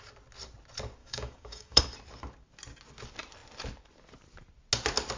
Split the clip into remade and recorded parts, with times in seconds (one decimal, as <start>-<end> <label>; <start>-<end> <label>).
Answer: 0.0-1.0 recorded; 1.0-1.8 remade; 1.8-5.2 recorded